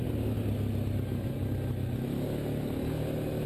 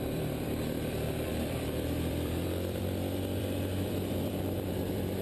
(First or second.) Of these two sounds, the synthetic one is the second